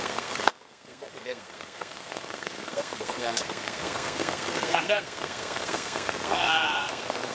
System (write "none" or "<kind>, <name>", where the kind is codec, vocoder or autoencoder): codec, SNAC